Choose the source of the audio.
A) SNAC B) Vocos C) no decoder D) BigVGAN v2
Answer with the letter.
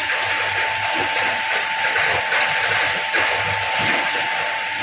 C